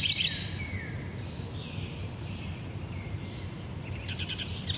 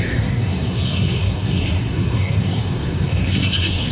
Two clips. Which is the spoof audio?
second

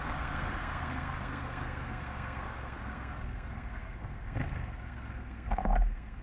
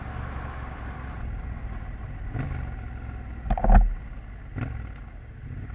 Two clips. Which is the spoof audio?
first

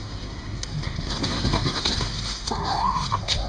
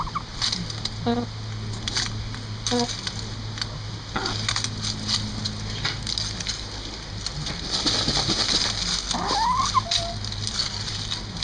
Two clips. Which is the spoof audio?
first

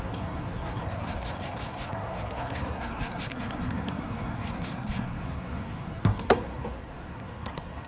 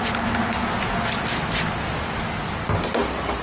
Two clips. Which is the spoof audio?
first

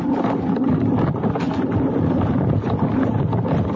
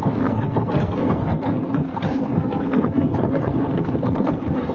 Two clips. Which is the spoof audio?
second